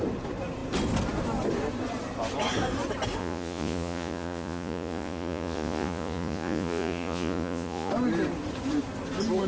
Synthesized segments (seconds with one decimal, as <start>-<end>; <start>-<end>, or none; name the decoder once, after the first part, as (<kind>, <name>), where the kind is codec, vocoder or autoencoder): 3.2-7.9 (vocoder, Vocos)